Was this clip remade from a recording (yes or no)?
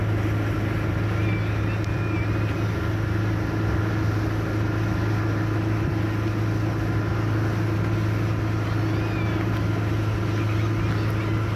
no